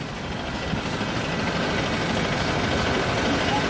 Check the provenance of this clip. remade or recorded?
recorded